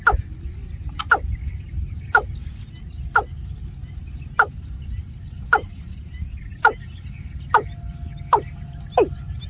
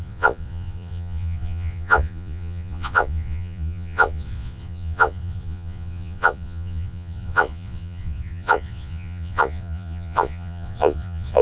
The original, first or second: first